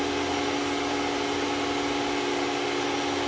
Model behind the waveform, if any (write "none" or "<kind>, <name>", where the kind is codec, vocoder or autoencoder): none